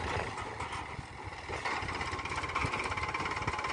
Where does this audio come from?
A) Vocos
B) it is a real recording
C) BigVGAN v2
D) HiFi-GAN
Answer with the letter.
B